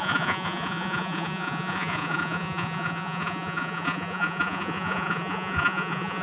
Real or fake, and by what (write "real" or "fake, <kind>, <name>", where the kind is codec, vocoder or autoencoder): fake, vocoder, Vocos